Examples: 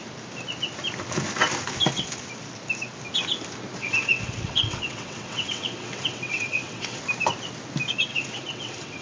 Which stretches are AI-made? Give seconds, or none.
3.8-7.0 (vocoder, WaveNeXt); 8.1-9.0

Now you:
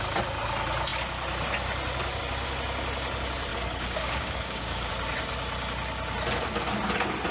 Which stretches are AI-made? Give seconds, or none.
3.5-4.9 (codec, DAC)

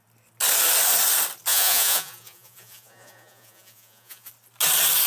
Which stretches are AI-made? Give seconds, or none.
1.5-4.3 (vocoder, Vocos)

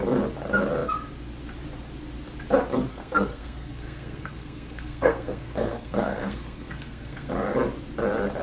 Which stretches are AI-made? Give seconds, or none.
2.9-7.3 (codec, SNAC)

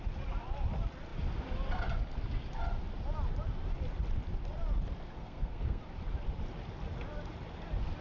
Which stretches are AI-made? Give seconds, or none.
5.2-5.8 (codec, SNAC)

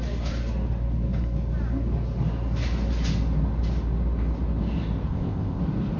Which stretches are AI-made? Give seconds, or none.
5.1-5.6 (codec, ZipCodec)

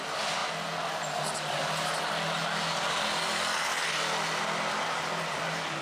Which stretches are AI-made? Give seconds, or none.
none

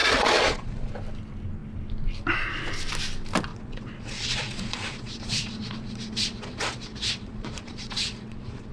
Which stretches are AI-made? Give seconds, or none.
0.0-0.9 (vocoder, Vocos); 3.5-8.7